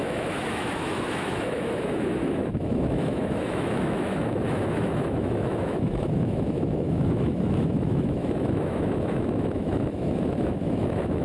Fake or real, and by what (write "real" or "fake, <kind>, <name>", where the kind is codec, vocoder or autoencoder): fake, autoencoder, DAC-VAE